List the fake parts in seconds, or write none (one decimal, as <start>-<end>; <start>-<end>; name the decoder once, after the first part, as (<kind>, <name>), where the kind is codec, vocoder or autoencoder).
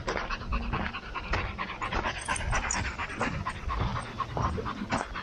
none